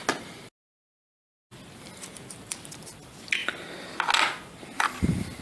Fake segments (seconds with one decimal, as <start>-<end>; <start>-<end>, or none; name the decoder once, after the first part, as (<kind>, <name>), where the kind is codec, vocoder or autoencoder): none